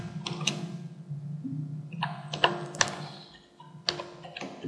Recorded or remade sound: recorded